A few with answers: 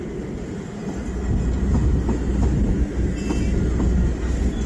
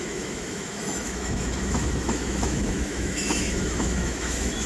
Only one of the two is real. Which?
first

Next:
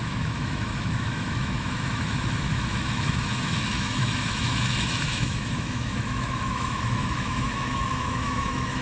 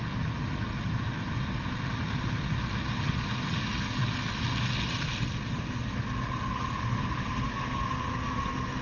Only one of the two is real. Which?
second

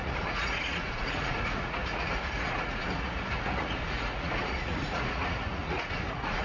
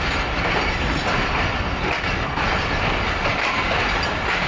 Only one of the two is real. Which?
second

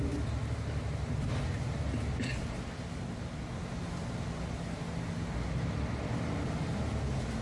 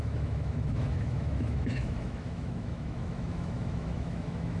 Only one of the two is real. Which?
first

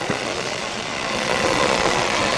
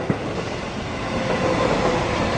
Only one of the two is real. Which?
second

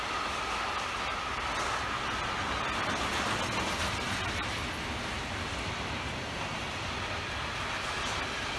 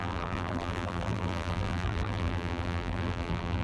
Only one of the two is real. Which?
first